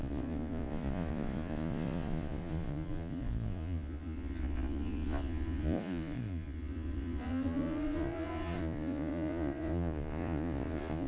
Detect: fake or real fake